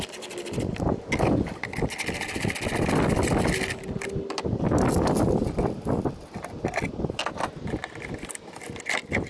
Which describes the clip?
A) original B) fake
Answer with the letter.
A